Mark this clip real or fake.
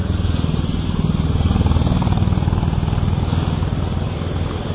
real